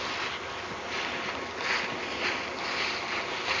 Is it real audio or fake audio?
real